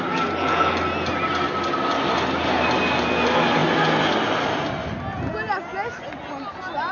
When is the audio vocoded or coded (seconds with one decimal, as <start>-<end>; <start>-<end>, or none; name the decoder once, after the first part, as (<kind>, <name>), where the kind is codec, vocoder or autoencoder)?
none